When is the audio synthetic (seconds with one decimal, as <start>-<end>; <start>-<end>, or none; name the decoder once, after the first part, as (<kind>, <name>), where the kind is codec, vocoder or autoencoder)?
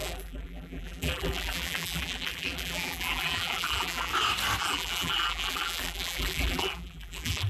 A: 0.0-4.1 (vocoder, BigVGAN v2); 4.6-7.5